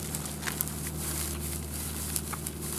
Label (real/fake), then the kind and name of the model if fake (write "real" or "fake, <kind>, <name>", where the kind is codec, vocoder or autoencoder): real